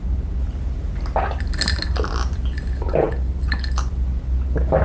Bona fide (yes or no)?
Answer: yes